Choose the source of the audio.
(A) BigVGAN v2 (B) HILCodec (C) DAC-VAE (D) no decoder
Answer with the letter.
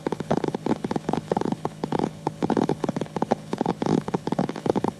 B